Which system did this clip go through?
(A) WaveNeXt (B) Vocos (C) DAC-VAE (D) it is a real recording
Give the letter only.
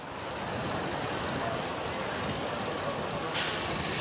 D